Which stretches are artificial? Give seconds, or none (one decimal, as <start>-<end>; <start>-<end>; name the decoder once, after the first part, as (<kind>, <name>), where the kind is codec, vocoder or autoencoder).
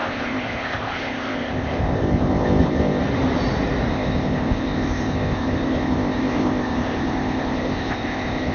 0.0-3.0 (codec, ZipCodec); 3.9-8.5